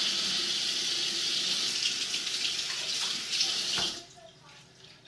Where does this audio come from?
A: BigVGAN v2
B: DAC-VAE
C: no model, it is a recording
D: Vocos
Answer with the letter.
C